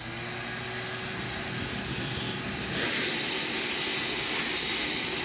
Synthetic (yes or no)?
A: no